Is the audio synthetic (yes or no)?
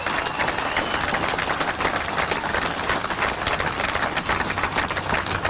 no